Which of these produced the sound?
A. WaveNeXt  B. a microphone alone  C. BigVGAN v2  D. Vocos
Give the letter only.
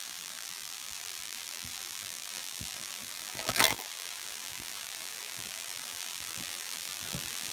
C